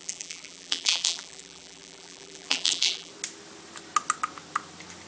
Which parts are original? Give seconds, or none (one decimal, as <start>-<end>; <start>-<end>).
3.1-5.1